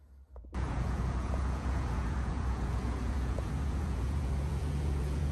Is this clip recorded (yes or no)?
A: no